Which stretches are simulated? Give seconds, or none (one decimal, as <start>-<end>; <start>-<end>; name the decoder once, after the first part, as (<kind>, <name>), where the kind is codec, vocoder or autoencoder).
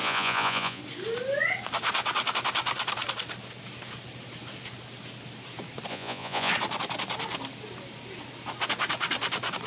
0.0-0.8 (vocoder, Vocos); 5.9-6.5